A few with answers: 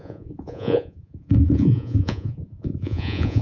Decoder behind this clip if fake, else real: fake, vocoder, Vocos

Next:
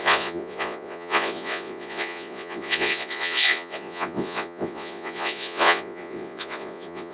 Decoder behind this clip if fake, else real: fake, vocoder, Vocos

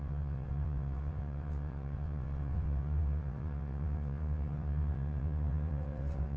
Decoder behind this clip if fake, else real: fake, vocoder, WaveNeXt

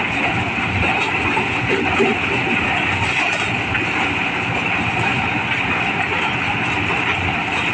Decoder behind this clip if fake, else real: real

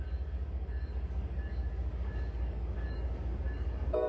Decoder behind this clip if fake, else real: fake, codec, DAC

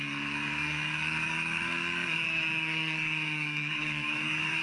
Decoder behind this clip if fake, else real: fake, codec, DAC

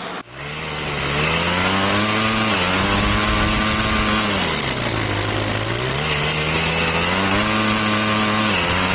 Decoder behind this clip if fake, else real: real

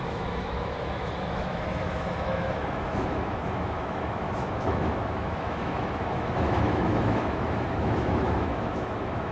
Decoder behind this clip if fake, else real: fake, autoencoder, DAC-VAE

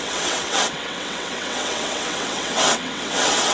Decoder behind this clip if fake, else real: fake, vocoder, WaveNeXt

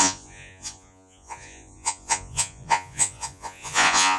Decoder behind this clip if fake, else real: fake, vocoder, Vocos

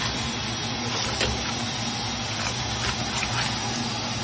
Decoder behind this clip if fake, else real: real